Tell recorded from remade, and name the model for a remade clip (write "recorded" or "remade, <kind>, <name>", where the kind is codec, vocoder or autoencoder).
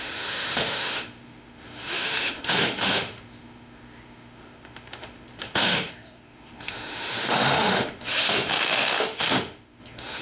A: remade, autoencoder, DAC-VAE